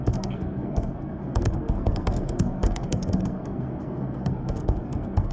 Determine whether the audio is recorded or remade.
remade